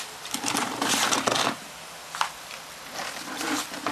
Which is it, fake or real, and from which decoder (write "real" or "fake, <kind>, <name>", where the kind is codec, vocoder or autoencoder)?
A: real